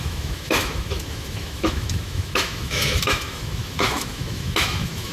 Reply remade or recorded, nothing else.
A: remade